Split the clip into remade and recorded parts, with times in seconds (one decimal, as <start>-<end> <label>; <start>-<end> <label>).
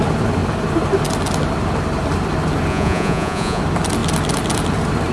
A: 0.0-2.7 recorded; 2.7-3.6 remade; 3.6-5.1 recorded